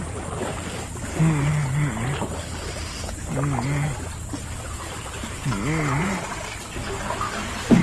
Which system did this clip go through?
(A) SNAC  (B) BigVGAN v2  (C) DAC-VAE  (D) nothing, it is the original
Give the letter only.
D